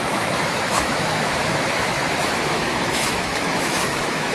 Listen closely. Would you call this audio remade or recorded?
remade